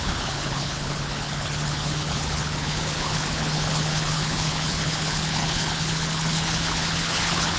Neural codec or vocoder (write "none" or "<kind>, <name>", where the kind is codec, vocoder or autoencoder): codec, HILCodec